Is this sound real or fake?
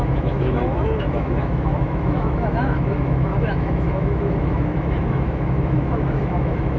fake